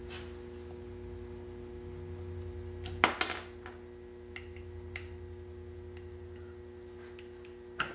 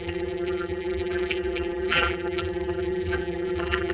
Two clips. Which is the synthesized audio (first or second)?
second